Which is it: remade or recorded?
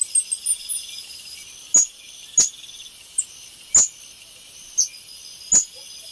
recorded